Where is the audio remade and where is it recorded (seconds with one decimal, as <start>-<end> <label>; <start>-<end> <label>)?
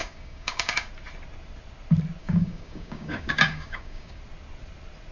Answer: 0.0-0.9 remade; 0.9-2.2 recorded; 2.2-4.2 remade; 4.2-5.1 recorded